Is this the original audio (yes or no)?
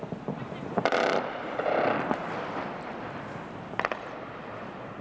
no